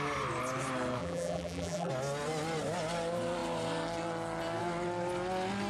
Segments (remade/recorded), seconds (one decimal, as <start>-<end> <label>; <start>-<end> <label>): 0.0-1.0 recorded; 1.0-1.9 remade; 1.9-5.7 recorded